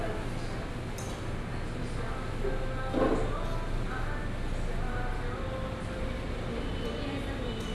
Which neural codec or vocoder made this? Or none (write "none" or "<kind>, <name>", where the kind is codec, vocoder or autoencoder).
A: none